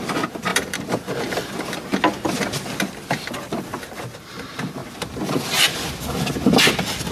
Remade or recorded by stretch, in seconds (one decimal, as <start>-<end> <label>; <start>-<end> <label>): 0.0-7.1 recorded